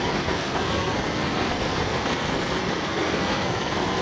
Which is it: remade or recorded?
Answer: remade